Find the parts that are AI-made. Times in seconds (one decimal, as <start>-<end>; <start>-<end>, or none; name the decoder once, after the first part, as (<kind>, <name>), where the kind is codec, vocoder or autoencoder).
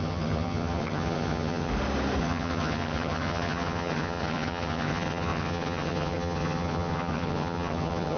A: 0.0-1.7 (vocoder, HiFi-GAN); 2.2-8.2